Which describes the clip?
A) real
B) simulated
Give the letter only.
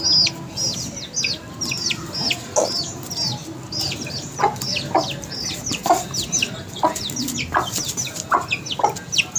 A